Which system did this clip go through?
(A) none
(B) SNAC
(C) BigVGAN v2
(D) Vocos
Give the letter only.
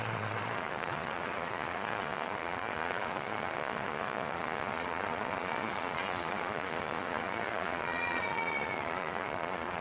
D